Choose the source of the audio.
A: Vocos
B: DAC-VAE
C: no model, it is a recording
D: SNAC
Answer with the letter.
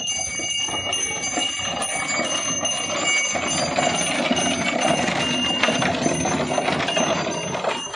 C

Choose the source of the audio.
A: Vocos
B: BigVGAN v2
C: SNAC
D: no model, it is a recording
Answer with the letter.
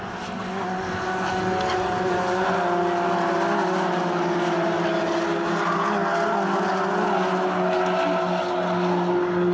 D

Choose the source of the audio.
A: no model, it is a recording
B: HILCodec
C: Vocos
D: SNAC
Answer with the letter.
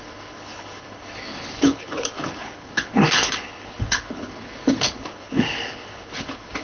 B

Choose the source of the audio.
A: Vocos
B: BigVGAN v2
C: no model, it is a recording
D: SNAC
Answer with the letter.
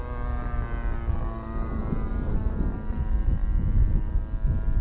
C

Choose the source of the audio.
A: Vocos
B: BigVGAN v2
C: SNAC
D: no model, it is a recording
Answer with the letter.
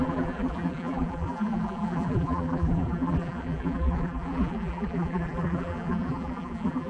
B